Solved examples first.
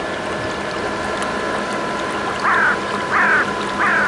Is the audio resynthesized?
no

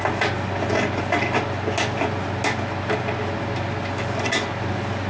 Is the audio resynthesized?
no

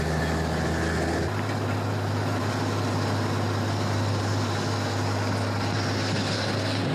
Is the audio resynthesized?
no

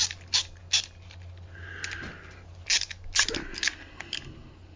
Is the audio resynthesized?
no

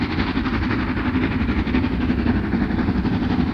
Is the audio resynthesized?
no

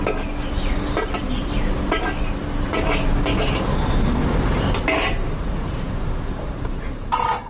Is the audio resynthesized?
no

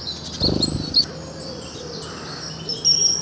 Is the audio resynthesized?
no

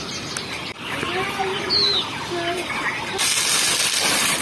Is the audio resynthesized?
no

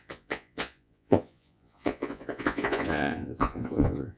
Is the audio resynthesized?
yes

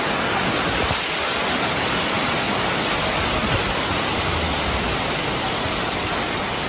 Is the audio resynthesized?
no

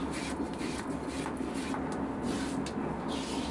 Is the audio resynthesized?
no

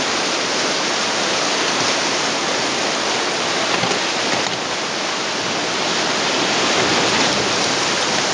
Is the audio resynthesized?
no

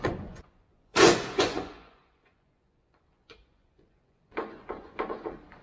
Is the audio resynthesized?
yes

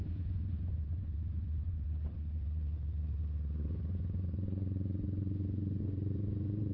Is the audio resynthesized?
yes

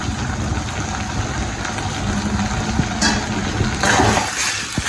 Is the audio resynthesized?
no